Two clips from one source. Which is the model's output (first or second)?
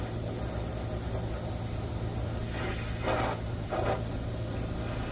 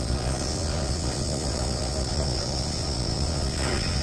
second